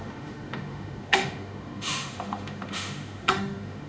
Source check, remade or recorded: remade